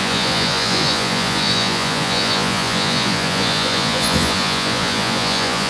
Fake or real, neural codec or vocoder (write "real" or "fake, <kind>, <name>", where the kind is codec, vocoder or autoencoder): fake, vocoder, Vocos